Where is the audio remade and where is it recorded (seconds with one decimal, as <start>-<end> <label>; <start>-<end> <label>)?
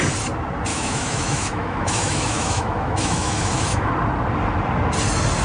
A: 0.0-0.7 recorded; 0.7-3.9 remade; 3.9-5.4 recorded